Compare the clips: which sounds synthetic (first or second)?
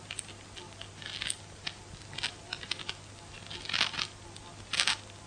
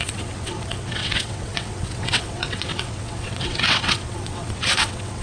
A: second